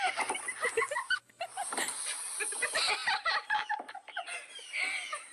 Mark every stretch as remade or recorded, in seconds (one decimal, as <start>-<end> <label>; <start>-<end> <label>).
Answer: 0.0-1.6 recorded; 1.6-2.4 remade; 2.4-5.3 recorded